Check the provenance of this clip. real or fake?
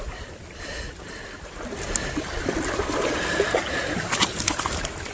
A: real